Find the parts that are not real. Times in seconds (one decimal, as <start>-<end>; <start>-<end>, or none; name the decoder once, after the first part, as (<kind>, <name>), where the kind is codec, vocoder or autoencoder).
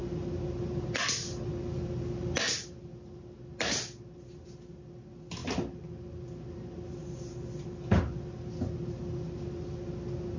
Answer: none